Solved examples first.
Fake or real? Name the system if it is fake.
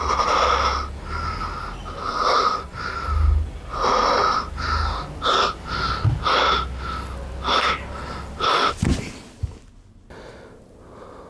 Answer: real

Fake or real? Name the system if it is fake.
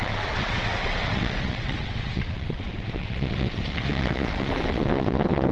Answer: fake, vocoder, WaveNeXt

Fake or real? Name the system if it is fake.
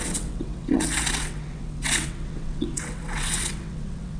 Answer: fake, vocoder, WaveNeXt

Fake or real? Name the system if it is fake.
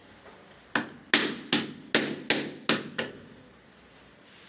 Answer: real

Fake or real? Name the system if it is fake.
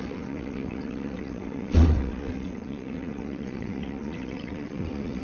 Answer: fake, vocoder, WaveNeXt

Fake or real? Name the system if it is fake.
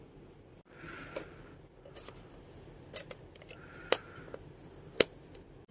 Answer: real